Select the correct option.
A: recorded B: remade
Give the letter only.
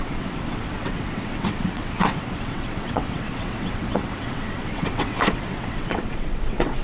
B